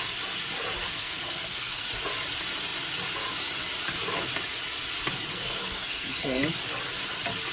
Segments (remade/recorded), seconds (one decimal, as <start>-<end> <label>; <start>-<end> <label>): 0.0-0.8 recorded; 0.8-1.9 remade; 1.9-5.3 recorded; 5.3-6.4 remade; 6.4-7.5 recorded